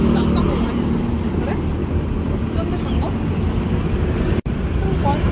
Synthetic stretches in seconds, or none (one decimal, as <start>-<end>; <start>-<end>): none